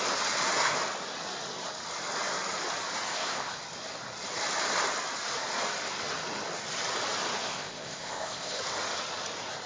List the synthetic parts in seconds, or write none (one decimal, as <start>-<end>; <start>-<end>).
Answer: 3.1-3.6; 7.4-8.6